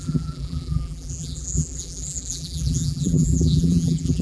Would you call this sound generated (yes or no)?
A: yes